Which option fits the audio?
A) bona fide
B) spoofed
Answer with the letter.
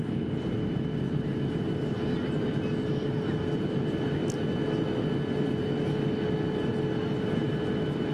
A